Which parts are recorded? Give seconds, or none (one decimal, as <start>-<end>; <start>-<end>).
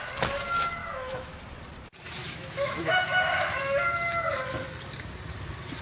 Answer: 0.0-0.8; 1.4-2.2; 3.6-5.8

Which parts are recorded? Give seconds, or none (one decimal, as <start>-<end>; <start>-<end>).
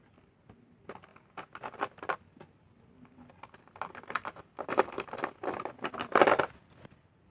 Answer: 0.0-7.3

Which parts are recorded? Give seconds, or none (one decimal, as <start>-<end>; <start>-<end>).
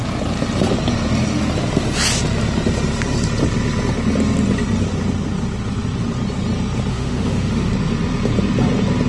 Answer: 0.0-6.9; 7.7-9.1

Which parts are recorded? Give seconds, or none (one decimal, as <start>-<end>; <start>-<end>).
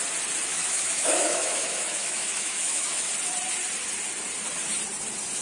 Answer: 0.0-0.5; 3.1-5.4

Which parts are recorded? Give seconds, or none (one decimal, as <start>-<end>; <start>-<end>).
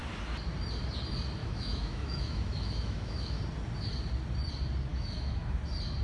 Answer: 0.0-1.4; 3.4-4.9; 5.6-6.0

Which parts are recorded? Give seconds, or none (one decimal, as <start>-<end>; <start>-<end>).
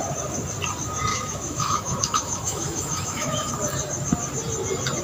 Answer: 0.0-1.1; 3.5-5.0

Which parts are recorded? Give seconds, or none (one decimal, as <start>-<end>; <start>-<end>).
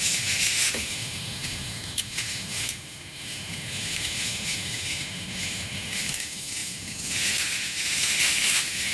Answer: none